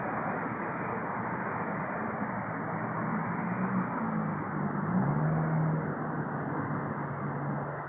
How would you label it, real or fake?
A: real